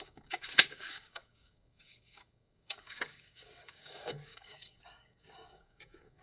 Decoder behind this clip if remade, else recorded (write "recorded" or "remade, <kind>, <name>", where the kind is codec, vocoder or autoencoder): remade, codec, DAC